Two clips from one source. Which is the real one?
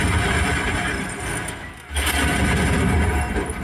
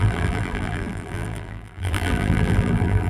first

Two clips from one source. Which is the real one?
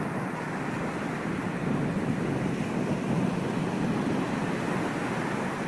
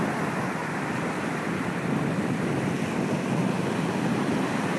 first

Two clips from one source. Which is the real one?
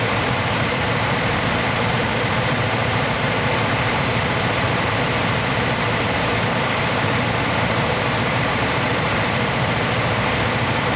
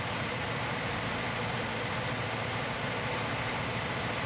second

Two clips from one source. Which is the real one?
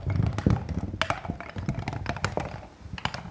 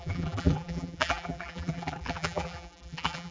first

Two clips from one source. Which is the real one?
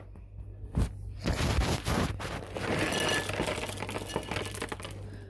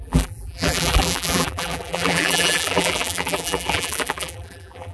first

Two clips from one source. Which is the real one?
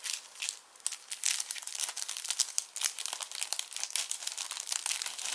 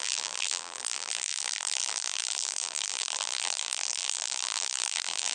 first